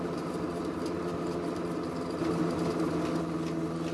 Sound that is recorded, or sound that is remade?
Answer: recorded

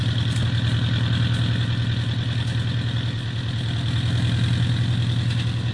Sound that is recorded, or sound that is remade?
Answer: recorded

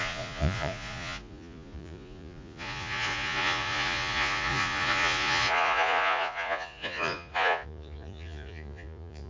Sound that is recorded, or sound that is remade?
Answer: remade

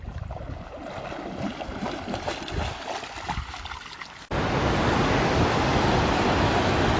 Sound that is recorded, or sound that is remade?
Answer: recorded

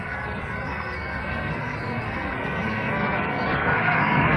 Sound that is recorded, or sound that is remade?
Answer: remade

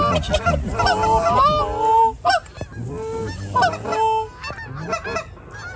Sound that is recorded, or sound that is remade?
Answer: recorded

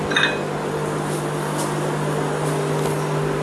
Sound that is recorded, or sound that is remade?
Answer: recorded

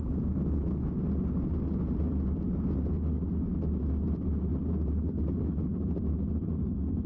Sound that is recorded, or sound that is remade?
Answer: recorded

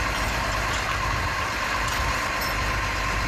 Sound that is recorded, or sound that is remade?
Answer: recorded